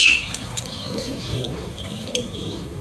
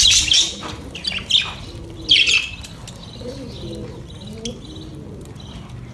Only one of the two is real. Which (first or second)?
second